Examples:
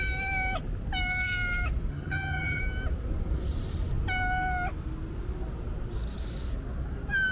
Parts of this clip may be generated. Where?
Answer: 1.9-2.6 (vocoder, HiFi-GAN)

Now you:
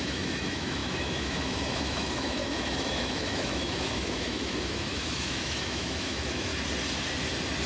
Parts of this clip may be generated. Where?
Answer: 0.0-6.5 (autoencoder, DAC-VAE)

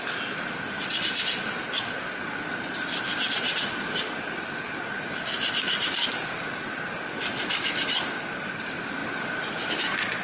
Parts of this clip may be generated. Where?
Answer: none

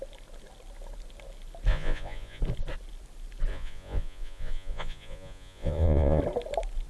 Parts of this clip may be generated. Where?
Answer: 1.7-2.4 (vocoder, Vocos); 3.5-6.2